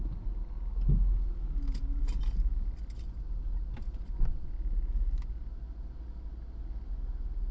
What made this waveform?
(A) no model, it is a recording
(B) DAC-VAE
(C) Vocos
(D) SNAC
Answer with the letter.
A